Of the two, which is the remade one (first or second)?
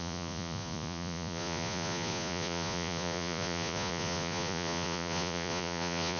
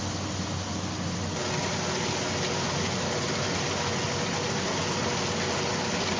first